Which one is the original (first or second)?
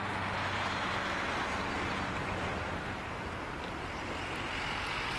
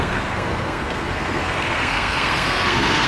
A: first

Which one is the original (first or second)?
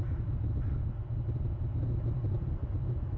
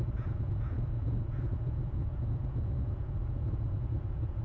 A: first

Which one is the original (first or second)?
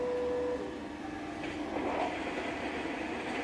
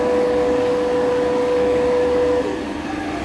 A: first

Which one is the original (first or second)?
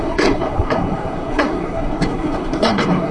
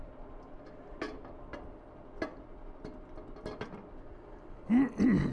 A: second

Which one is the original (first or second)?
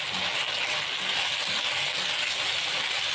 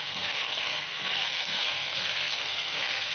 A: first